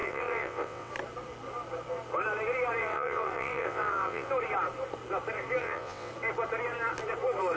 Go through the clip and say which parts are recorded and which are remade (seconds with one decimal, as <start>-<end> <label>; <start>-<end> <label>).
0.0-0.9 remade; 0.9-2.8 recorded; 2.8-4.3 remade; 4.3-5.6 recorded; 5.6-6.1 remade; 6.1-7.6 recorded